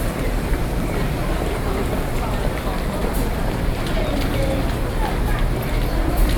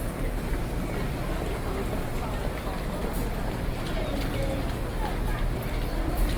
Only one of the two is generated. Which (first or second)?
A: first